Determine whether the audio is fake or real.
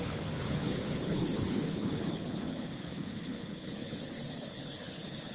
fake